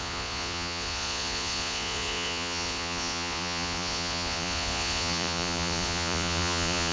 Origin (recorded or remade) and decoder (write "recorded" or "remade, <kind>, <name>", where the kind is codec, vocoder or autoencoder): remade, vocoder, Vocos